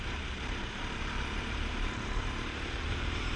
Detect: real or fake fake